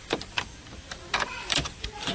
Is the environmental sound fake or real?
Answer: fake